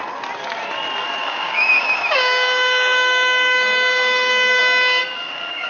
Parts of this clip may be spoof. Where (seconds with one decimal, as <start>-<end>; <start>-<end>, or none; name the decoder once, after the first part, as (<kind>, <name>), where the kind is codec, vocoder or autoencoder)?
1.2-4.6 (codec, DAC); 5.0-5.7